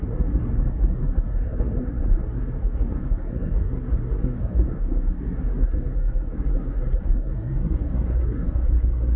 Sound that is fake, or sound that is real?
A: fake